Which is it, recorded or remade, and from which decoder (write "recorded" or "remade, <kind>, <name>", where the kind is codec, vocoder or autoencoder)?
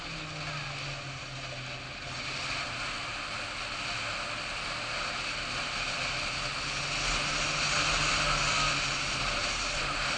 recorded